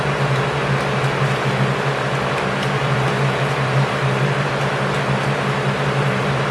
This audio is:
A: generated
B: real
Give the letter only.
B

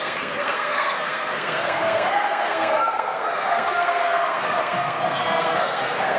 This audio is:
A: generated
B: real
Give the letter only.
A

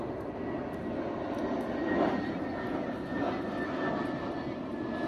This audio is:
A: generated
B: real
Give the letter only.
B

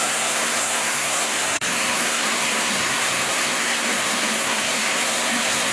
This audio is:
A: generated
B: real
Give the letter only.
A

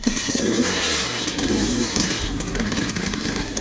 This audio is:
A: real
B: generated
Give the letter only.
B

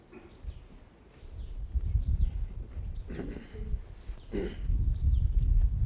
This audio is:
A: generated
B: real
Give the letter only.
B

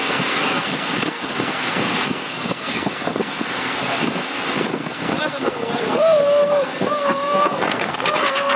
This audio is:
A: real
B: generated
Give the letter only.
B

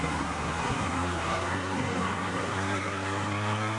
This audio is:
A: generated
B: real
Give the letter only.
A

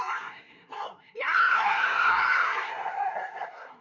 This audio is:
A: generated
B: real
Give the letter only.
A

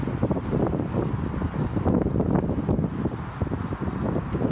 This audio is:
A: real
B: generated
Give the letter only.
A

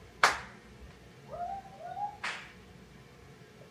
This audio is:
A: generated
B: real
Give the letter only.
B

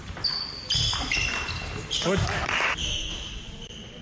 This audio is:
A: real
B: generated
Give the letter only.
A